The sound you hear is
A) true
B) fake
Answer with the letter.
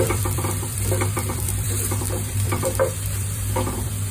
B